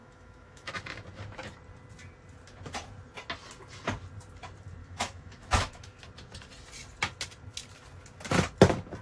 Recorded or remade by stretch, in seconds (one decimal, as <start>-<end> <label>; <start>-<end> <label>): 0.0-0.7 remade; 0.7-4.8 recorded; 4.8-6.0 remade; 6.0-9.0 recorded